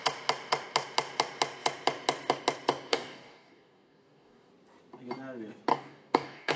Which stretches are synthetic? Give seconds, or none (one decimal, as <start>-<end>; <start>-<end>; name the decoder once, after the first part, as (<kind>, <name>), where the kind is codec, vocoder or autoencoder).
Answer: 2.9-4.5 (codec, DAC); 5.7-6.6